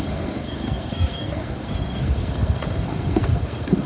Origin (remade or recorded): remade